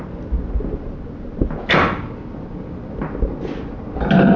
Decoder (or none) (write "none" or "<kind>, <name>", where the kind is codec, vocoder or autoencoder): none